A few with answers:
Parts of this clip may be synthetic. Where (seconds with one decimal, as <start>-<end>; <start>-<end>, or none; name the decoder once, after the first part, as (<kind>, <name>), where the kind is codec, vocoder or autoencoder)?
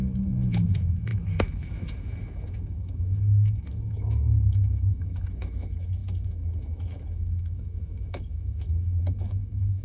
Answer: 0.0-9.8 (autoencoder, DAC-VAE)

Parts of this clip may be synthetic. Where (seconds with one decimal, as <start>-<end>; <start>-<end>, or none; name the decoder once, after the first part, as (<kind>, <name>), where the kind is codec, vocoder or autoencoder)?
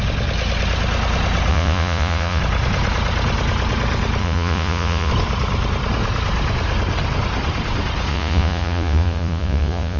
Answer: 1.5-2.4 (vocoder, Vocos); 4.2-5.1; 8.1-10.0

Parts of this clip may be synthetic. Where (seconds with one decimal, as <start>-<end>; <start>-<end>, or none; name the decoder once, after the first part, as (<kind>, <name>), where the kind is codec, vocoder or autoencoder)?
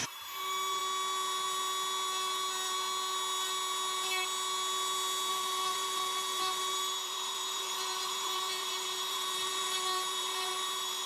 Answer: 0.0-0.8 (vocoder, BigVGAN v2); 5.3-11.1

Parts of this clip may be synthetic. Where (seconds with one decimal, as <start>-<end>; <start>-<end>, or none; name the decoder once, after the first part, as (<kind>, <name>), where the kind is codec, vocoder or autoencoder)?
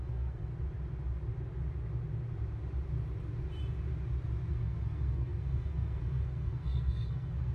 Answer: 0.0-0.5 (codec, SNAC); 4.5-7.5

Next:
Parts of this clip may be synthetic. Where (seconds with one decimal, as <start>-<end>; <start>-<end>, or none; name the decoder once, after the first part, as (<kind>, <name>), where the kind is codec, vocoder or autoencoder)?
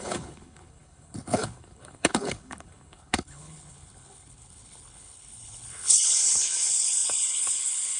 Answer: 0.0-8.0 (codec, HILCodec)